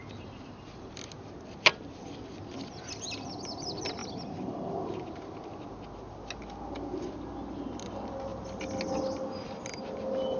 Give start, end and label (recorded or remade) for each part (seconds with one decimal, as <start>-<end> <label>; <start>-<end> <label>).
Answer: 0.0-10.4 recorded